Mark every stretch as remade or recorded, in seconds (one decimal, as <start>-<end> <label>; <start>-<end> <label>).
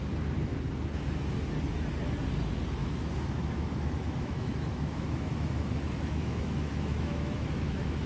0.0-2.8 recorded; 2.8-8.1 remade